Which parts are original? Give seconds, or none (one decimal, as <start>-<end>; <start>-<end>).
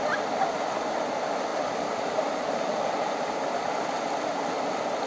0.0-5.1